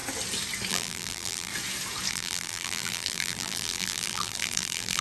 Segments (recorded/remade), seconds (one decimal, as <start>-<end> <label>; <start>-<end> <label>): 0.0-0.7 recorded; 0.7-1.5 remade; 1.5-2.1 recorded; 2.1-5.0 remade